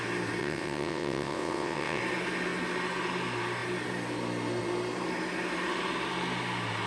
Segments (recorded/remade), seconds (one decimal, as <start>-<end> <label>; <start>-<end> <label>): 0.0-0.4 recorded; 0.4-2.0 remade; 2.0-6.9 recorded